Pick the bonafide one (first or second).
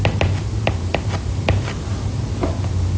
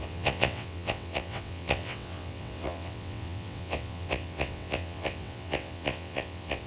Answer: first